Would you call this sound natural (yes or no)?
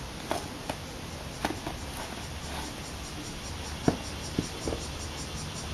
yes